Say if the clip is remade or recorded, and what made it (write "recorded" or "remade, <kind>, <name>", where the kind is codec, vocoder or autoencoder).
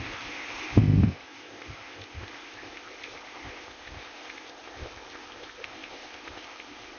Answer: remade, codec, ZipCodec